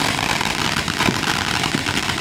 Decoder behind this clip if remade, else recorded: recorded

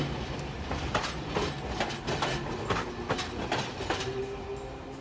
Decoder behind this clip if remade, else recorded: recorded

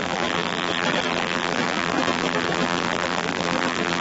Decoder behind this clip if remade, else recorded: remade, vocoder, BigVGAN v2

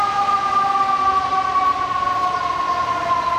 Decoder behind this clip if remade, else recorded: recorded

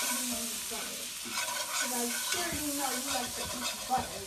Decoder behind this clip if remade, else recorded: recorded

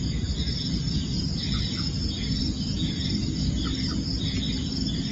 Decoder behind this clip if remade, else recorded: recorded